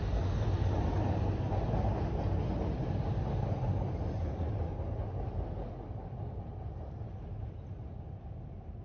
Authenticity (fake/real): real